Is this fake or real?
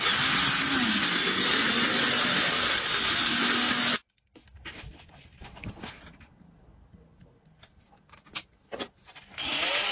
real